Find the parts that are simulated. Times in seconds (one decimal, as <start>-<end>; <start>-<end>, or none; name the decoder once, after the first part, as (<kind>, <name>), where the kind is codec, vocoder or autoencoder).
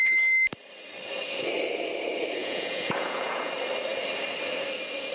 2.4-3.5 (vocoder, Vocos)